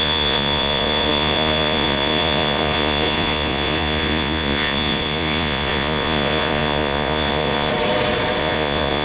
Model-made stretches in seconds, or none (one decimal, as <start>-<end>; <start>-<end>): 0.0-7.7; 8.4-9.0